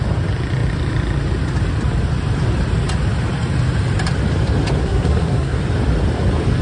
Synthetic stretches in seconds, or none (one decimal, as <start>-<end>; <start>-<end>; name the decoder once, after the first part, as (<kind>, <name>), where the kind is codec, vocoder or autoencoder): 4.8-5.6 (codec, SNAC)